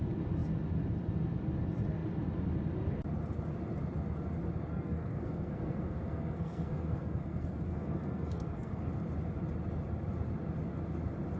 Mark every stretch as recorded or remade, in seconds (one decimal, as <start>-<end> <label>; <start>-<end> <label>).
0.0-4.7 recorded; 4.7-8.8 remade; 8.8-11.4 recorded